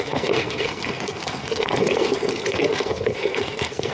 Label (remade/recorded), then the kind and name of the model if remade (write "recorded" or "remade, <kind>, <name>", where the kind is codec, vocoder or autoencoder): remade, codec, SNAC